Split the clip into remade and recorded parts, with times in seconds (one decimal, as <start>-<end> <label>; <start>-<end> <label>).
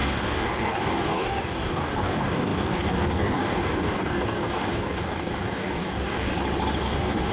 0.0-6.3 remade; 6.3-6.8 recorded; 6.8-7.3 remade